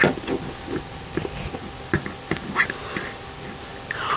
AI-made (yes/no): no